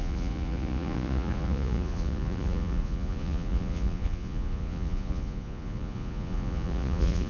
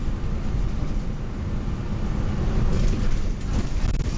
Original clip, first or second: second